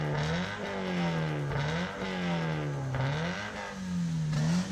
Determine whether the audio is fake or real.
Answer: real